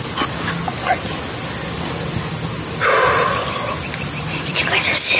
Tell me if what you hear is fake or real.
real